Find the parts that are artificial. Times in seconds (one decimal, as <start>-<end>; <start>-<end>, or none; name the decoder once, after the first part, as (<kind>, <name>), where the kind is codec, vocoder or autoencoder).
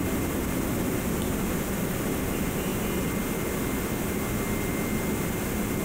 none